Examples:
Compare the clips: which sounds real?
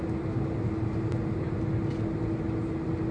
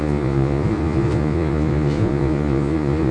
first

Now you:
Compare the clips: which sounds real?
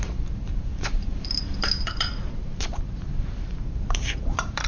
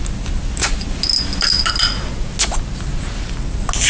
second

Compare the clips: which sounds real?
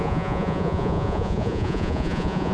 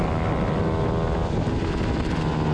second